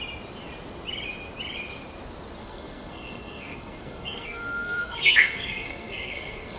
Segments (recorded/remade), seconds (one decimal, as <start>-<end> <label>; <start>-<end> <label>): 0.0-2.4 recorded; 2.4-6.6 remade